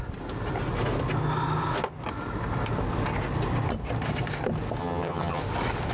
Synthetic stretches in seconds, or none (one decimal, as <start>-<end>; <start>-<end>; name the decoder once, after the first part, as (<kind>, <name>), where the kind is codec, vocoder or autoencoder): 4.8-5.4 (vocoder, HiFi-GAN)